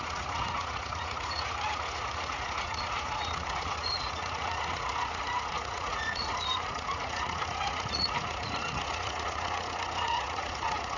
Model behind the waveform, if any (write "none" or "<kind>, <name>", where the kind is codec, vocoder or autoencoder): vocoder, Vocos